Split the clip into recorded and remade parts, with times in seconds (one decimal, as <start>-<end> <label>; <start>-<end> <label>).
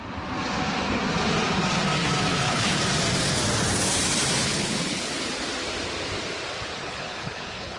0.0-2.3 recorded; 2.3-2.8 remade; 2.8-4.4 recorded; 4.4-5.3 remade; 5.3-6.8 recorded; 6.8-7.8 remade